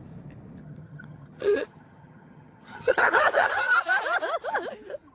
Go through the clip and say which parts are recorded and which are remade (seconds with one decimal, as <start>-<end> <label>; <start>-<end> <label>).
0.0-0.6 recorded; 0.6-3.7 remade; 3.7-5.1 recorded